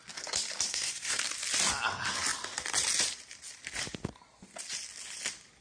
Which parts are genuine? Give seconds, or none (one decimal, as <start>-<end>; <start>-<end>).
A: 0.0-0.7; 1.2-5.6